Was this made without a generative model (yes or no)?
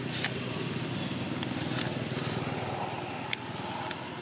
yes